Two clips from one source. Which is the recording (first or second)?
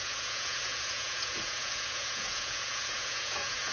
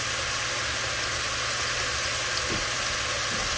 second